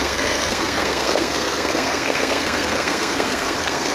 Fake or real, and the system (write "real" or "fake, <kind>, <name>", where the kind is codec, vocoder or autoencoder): fake, codec, SNAC